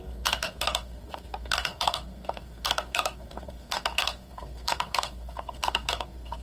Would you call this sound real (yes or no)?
no